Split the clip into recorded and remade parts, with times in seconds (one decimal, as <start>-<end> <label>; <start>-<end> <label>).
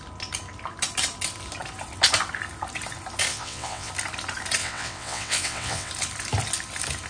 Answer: 0.0-3.3 recorded; 3.3-3.9 remade; 3.9-4.6 recorded; 4.6-5.9 remade; 5.9-7.1 recorded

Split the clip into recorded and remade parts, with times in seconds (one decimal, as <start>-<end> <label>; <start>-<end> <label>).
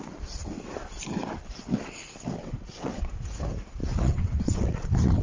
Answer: 0.0-2.4 recorded; 2.4-3.1 remade; 3.1-3.8 recorded; 3.8-5.2 remade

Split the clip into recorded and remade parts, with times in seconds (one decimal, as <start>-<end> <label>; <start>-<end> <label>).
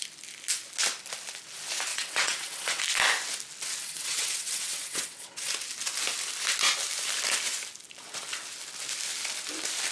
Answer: 0.0-1.9 recorded; 1.9-2.8 remade; 2.8-3.8 recorded; 3.8-5.5 remade; 5.5-9.9 recorded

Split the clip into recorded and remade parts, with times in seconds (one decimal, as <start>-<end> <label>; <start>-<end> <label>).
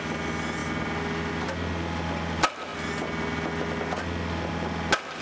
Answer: 0.0-5.2 recorded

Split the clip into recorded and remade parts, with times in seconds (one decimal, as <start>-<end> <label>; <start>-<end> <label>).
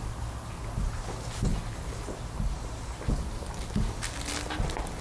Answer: 0.0-5.0 recorded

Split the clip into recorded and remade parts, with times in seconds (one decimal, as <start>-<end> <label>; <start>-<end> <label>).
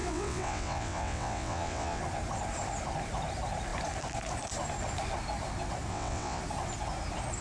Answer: 0.0-2.0 remade; 2.0-5.9 recorded; 5.9-6.4 remade; 6.4-7.4 recorded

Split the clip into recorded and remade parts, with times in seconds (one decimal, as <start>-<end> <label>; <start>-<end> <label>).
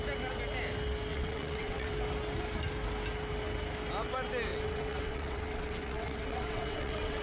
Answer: 0.0-1.1 recorded; 1.1-1.9 remade; 1.9-4.5 recorded; 4.5-7.2 remade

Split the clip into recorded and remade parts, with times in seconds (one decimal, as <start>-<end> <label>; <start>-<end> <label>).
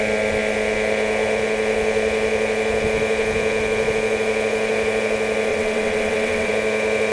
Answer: 0.0-5.5 recorded; 5.5-6.5 remade; 6.5-7.1 recorded